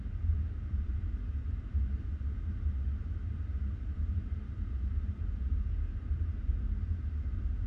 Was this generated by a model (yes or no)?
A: yes